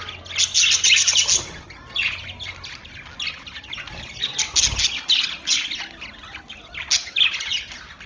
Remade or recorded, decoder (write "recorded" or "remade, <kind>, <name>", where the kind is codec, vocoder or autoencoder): recorded